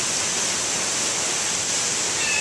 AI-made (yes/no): no